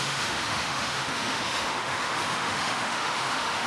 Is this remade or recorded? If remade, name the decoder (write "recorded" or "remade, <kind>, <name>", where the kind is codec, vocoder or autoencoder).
remade, autoencoder, DAC-VAE